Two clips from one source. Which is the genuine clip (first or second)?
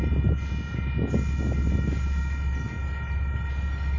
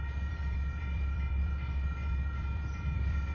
first